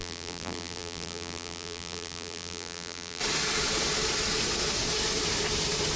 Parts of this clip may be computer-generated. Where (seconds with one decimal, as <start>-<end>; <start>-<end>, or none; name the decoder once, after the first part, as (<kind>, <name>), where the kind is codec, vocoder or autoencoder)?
0.0-3.2 (vocoder, BigVGAN v2)